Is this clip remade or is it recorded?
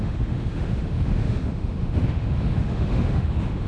remade